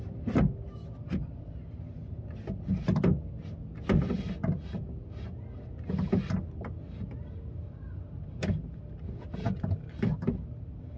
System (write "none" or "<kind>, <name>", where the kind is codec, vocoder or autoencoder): none